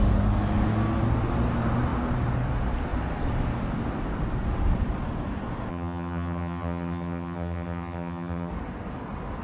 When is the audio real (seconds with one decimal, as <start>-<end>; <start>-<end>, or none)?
0.0-5.7; 8.5-9.4